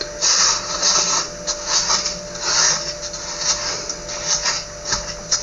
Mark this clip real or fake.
real